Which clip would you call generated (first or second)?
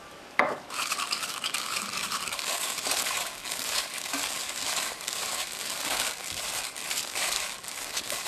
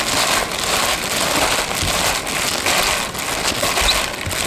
first